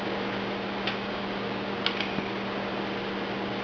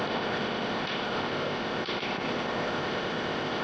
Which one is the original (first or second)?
first